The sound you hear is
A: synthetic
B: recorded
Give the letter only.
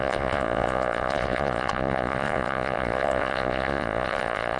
A